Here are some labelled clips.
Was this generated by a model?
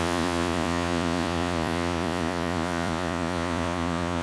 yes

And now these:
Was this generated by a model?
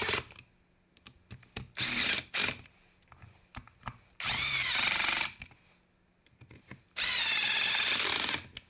no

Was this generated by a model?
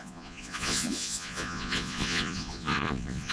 yes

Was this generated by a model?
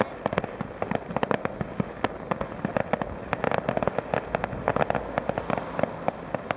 no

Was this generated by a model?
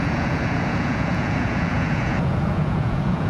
yes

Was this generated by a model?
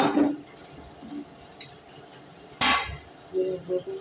no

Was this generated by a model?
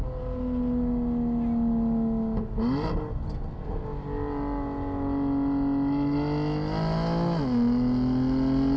no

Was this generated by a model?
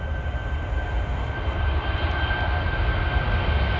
no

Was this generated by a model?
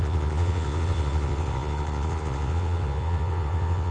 yes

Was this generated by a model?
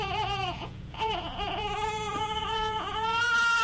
yes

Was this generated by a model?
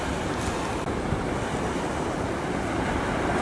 no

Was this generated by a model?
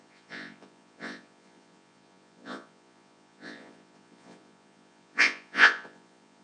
yes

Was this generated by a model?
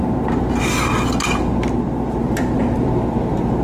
no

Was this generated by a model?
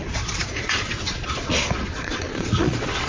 yes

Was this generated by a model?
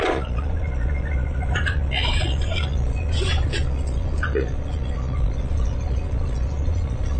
yes